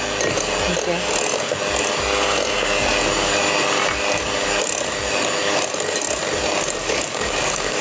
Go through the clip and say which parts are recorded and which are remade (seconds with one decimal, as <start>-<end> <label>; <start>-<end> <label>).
0.0-6.8 recorded; 6.8-7.8 remade

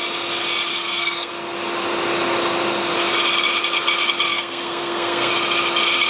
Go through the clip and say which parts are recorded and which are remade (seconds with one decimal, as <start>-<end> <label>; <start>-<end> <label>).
0.0-0.7 recorded; 0.7-1.3 remade; 1.3-4.3 recorded; 4.3-5.3 remade; 5.3-6.1 recorded

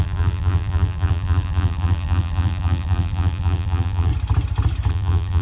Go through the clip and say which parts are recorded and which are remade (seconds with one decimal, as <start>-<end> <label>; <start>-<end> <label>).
0.0-4.1 remade; 4.1-4.9 recorded; 4.9-5.4 remade

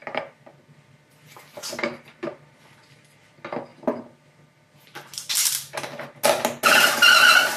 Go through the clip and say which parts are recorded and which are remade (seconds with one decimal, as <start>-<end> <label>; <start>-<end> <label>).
0.0-7.6 recorded

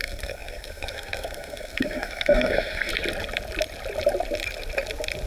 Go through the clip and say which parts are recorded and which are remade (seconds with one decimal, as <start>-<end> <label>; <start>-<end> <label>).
0.0-2.9 remade; 2.9-5.3 recorded

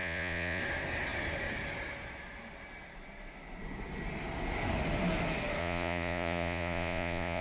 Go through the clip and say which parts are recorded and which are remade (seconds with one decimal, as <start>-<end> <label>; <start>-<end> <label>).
0.0-0.6 remade; 0.6-5.6 recorded; 5.6-7.4 remade

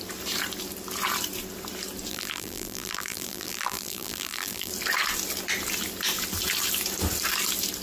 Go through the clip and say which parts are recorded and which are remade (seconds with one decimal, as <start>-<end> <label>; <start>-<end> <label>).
0.0-2.1 recorded; 2.1-4.7 remade; 4.7-7.8 recorded

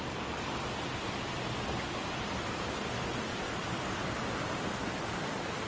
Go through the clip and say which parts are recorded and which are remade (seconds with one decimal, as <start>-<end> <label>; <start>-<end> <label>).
0.0-3.6 recorded; 3.6-4.2 remade; 4.2-5.7 recorded